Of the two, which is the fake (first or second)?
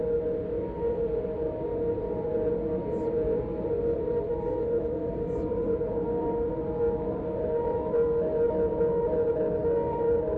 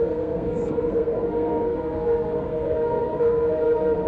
second